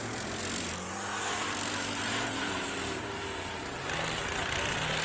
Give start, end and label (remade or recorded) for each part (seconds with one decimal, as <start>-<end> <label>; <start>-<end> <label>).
0.0-5.0 recorded